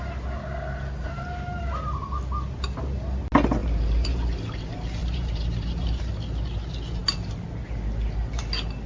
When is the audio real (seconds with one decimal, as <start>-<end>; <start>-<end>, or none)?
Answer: 0.0-1.0; 1.6-3.6; 4.6-5.0; 6.1-8.9